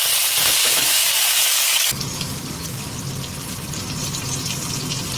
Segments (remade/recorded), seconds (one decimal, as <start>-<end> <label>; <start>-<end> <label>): 0.0-0.6 recorded; 0.6-2.9 remade; 2.9-5.2 recorded